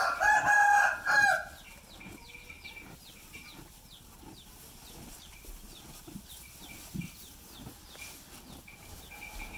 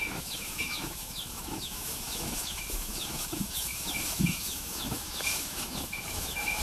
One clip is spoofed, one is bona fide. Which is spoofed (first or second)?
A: second